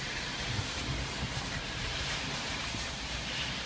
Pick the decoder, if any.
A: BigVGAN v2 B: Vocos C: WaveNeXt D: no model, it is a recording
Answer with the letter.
A